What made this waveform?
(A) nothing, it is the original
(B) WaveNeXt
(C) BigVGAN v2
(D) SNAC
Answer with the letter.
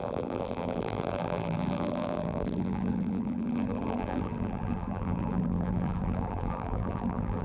C